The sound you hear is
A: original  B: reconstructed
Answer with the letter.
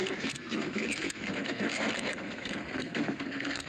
B